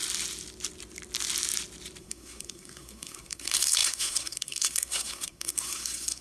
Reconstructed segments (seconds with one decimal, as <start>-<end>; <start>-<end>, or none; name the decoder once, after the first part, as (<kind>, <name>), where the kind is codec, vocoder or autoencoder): 2.0-6.2 (codec, SNAC)